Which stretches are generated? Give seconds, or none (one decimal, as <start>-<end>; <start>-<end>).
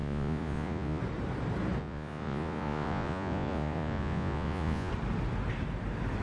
0.0-1.0; 1.8-4.9